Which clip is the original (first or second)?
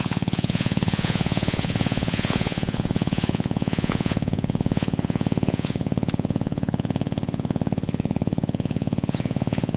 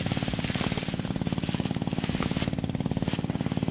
second